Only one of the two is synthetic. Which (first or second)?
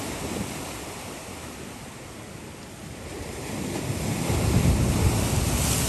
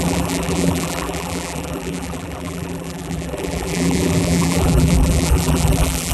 second